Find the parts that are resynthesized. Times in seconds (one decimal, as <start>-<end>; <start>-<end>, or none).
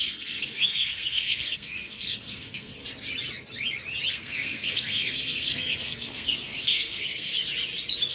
0.0-2.7; 4.1-7.3